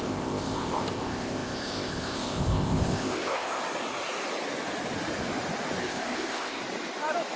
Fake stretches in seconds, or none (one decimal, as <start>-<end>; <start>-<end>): 0.0-3.6; 5.8-6.6